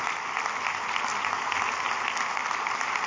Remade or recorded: recorded